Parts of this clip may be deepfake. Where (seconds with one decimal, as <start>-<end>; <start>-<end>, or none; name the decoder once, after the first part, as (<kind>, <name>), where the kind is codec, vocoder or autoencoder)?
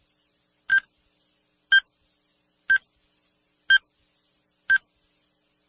none